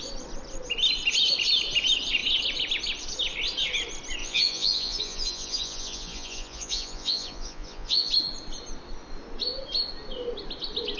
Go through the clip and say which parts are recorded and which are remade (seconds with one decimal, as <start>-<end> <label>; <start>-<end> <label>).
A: 0.0-4.2 recorded; 4.2-8.1 remade; 8.1-11.0 recorded